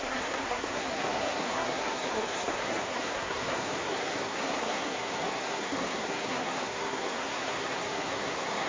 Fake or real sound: fake